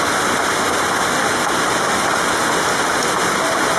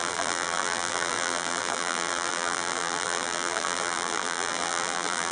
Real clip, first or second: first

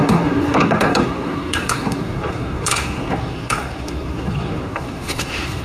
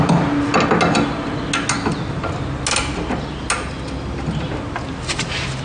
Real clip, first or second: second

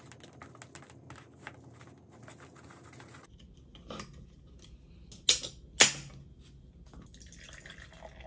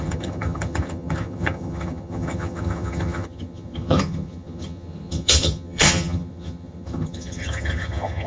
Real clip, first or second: first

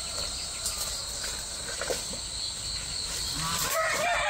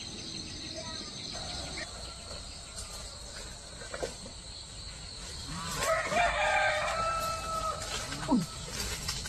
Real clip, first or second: first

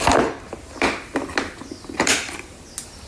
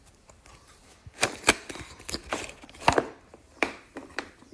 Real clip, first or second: first